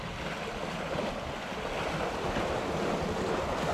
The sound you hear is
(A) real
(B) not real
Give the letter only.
A